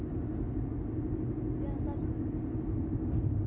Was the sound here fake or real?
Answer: real